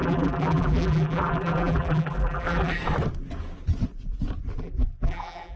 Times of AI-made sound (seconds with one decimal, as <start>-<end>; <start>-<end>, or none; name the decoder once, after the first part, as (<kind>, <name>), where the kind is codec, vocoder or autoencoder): 0.0-2.8 (vocoder, BigVGAN v2); 4.6-5.6